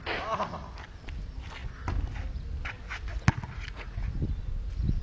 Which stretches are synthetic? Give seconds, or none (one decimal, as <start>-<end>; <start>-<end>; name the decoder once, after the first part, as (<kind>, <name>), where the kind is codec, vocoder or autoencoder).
3.1-4.0 (vocoder, Vocos)